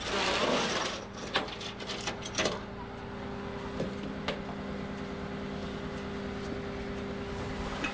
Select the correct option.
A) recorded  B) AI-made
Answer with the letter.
A